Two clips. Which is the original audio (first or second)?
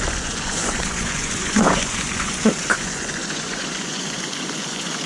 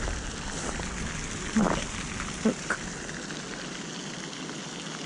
second